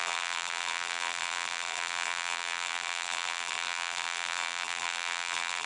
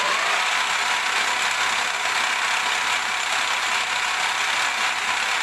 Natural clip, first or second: second